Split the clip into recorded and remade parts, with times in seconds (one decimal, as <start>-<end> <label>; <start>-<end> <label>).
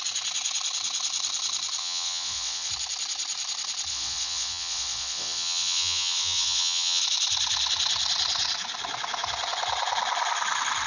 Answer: 0.0-1.8 recorded; 1.8-2.7 remade; 2.7-3.9 recorded; 3.9-7.0 remade; 7.0-10.9 recorded